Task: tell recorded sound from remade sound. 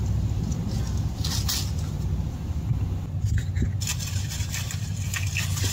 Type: recorded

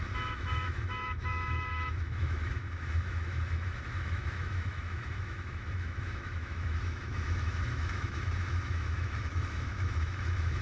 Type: remade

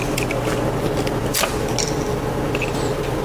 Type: recorded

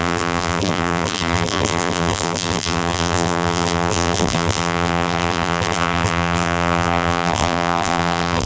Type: remade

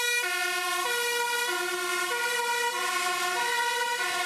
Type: recorded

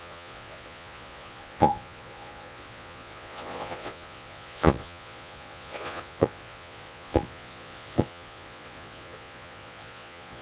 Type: remade